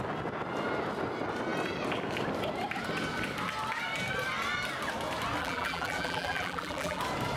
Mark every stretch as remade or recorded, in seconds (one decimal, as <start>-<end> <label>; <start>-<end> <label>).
0.0-5.4 recorded; 5.4-7.0 remade; 7.0-7.4 recorded